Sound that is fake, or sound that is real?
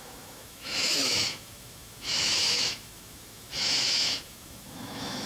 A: fake